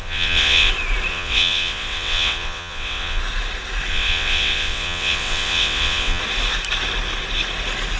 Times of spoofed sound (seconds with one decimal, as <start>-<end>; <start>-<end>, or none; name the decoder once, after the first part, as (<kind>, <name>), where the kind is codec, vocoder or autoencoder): 0.0-0.7 (vocoder, WaveNeXt); 1.1-3.2; 3.9-6.2